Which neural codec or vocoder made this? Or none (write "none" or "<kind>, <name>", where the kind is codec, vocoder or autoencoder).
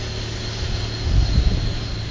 none